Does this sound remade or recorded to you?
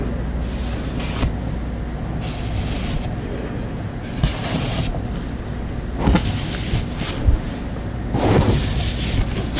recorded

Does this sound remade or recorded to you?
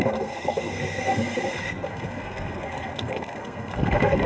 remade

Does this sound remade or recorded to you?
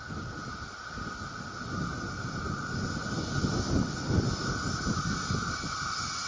recorded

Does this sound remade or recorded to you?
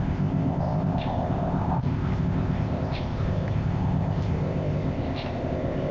remade